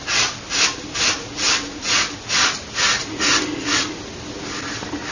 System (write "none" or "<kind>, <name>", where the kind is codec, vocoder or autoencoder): none